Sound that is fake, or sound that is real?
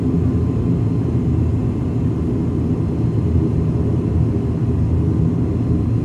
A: real